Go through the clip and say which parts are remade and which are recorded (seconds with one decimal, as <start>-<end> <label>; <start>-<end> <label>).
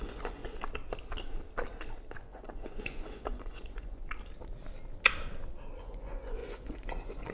0.0-0.4 remade; 0.4-2.2 recorded; 2.2-4.0 remade; 4.0-5.8 recorded; 5.8-7.3 remade